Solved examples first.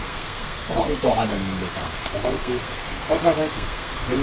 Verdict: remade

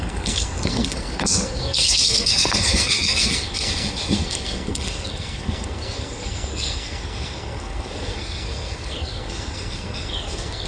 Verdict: remade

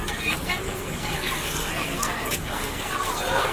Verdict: remade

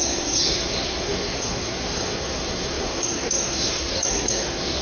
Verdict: remade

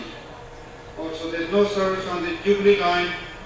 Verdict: recorded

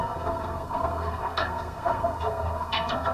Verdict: remade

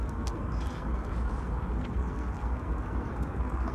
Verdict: remade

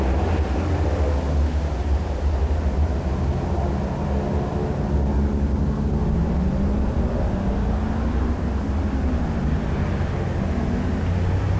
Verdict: recorded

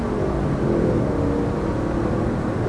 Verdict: recorded